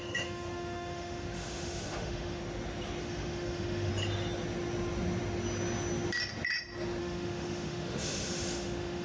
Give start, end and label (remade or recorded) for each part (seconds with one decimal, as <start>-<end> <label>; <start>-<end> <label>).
0.0-2.4 remade; 2.4-3.0 recorded; 3.0-3.9 remade; 3.9-7.0 recorded; 7.0-9.0 remade